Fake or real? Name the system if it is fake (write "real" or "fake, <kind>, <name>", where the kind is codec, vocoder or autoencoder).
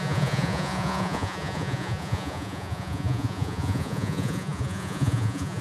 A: fake, vocoder, Vocos